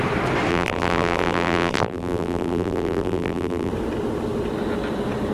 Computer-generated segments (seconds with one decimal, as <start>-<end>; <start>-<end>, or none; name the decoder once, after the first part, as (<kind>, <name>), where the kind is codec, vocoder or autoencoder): 0.5-3.7 (vocoder, BigVGAN v2)